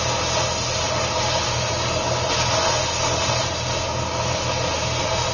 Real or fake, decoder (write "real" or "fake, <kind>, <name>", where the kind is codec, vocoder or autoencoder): real